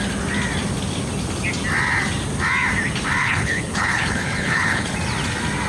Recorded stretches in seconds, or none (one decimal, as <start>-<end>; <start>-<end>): 0.0-3.2; 4.9-5.7